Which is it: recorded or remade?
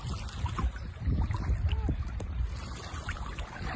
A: recorded